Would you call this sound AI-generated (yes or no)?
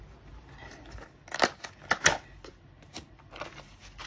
no